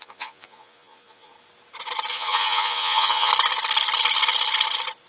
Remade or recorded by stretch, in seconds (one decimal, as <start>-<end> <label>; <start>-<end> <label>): 0.0-1.3 remade; 1.3-2.1 recorded; 2.1-3.3 remade; 3.3-5.1 recorded

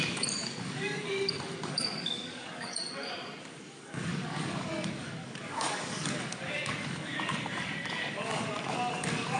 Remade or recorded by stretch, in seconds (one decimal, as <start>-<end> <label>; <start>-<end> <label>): 0.0-2.8 remade; 2.8-3.4 recorded; 3.4-9.4 remade

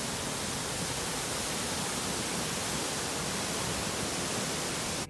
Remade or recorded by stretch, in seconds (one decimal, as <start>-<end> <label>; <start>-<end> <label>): 0.0-5.1 recorded

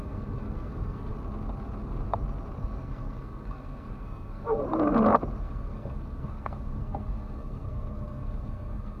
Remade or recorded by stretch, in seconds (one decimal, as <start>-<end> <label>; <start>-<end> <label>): 0.0-1.1 remade; 1.1-2.6 recorded; 2.6-4.6 remade; 4.6-5.4 recorded; 5.4-9.0 remade

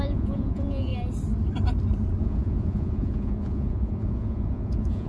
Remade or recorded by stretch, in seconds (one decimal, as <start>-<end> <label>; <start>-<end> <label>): 0.0-0.9 remade; 0.9-2.2 recorded; 2.2-5.1 remade

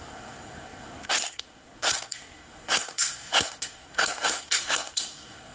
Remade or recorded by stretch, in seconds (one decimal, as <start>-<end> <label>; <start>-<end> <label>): 0.0-5.5 remade

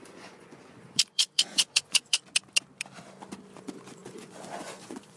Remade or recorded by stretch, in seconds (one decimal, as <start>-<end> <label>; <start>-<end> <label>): 0.0-2.2 remade; 2.2-3.6 recorded; 3.6-5.2 remade

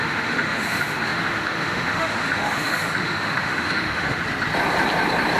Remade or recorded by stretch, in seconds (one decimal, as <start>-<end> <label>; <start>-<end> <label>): 0.0-4.2 remade; 4.2-5.4 recorded